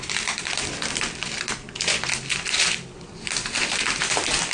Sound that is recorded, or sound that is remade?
recorded